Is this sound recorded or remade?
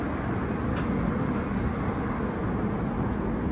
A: recorded